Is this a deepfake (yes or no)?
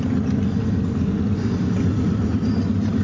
no